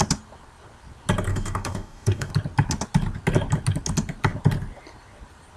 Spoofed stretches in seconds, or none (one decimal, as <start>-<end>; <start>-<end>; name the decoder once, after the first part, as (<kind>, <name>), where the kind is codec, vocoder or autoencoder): 1.3-2.3 (codec, DAC)